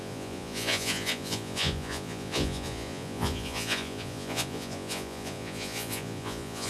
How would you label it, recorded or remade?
remade